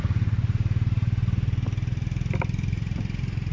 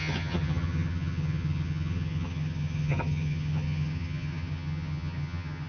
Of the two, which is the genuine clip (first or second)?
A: first